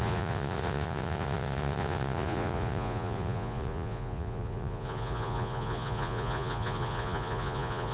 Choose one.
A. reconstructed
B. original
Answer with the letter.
A